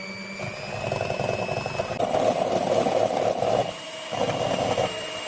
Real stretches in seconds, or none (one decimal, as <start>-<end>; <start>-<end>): 0.0-3.6; 4.4-5.3